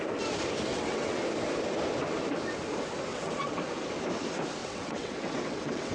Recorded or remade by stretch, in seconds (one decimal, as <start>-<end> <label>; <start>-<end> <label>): 0.0-0.7 recorded; 0.7-1.2 remade; 1.2-3.1 recorded; 3.1-3.6 remade; 3.6-4.6 recorded; 4.6-5.9 remade